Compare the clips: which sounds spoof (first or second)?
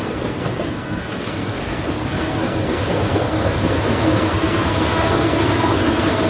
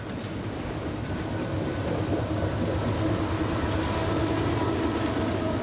first